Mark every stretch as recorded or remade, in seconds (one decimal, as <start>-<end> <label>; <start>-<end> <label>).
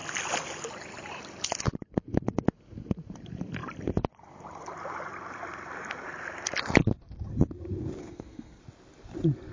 0.0-8.0 recorded; 8.0-8.6 remade; 8.6-9.5 recorded